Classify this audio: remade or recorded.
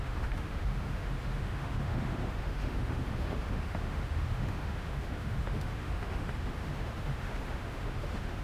remade